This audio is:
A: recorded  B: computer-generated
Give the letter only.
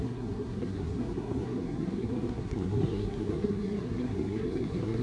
B